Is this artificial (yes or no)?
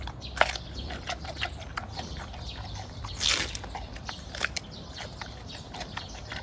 yes